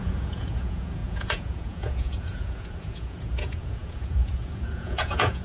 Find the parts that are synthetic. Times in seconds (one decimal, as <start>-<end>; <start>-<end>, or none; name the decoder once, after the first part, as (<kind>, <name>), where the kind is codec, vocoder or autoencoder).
0.0-5.4 (vocoder, Vocos)